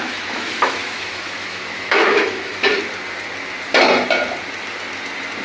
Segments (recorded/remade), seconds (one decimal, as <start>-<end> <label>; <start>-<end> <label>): 0.0-2.7 remade; 2.7-5.4 recorded